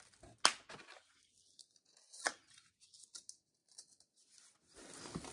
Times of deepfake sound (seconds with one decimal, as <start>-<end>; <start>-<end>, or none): none